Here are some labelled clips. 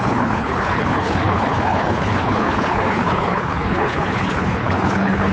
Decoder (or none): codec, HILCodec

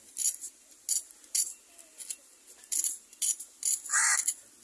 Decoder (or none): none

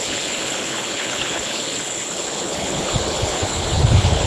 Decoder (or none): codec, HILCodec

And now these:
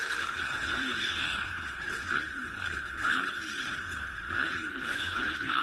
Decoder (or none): codec, HILCodec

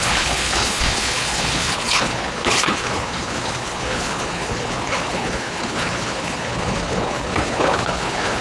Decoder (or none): codec, HILCodec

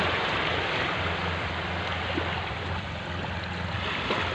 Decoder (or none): none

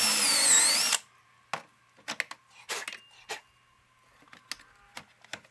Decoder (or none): none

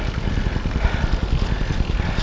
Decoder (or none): none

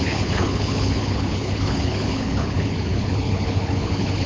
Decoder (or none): codec, HILCodec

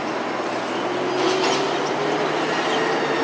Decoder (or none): none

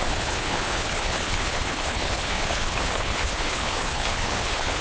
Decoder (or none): codec, HILCodec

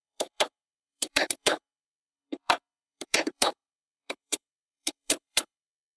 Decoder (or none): codec, HILCodec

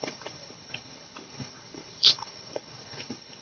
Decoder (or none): codec, HILCodec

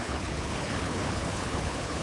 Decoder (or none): codec, HILCodec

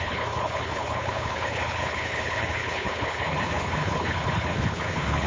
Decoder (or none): codec, HILCodec